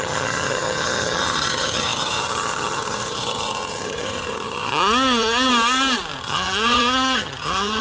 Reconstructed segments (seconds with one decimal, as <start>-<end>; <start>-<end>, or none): 0.0-5.5; 6.2-7.8